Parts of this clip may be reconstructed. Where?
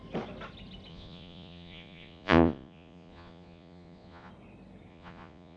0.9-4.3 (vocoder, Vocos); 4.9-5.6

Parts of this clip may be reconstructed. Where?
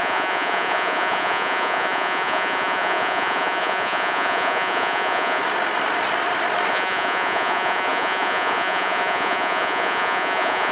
0.0-5.4 (vocoder, Vocos); 6.7-10.7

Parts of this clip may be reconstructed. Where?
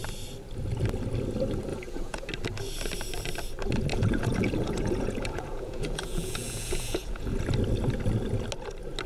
1.7-2.3 (vocoder, Vocos); 3.9-7.4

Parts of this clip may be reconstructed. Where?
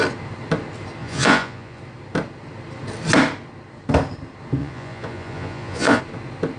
1.0-1.8 (vocoder, Vocos); 4.6-6.0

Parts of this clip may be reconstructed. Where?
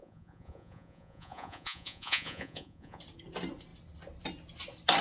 0.0-3.0 (vocoder, Vocos)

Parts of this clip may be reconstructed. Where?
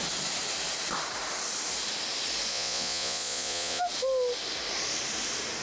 2.5-3.8 (vocoder, Vocos)